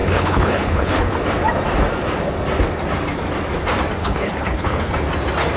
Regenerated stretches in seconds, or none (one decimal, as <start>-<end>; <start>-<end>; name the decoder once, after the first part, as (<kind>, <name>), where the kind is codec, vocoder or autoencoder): 0.0-1.1 (codec, HILCodec); 4.0-4.9